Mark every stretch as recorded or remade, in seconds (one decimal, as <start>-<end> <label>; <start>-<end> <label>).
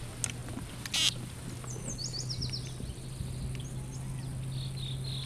0.0-5.3 recorded